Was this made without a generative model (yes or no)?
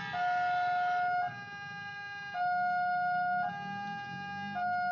yes